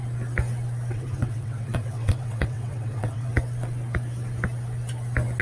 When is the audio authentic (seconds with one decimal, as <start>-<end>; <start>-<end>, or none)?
0.0-0.9; 3.3-5.4